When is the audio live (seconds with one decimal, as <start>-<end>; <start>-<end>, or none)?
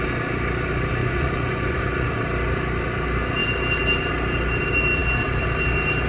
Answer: 0.0-1.0; 2.2-6.1